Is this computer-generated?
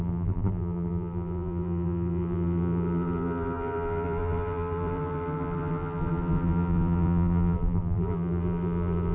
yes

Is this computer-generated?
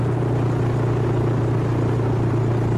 no